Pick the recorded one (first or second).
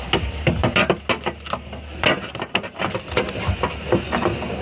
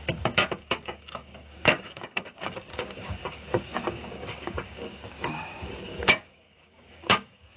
first